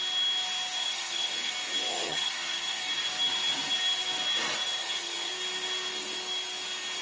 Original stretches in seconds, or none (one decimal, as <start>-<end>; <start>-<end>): 0.0-0.8; 1.5-1.9; 2.8-4.8; 5.3-7.0